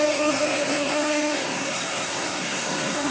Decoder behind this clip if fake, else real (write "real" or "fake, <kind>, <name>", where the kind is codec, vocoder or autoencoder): fake, codec, SNAC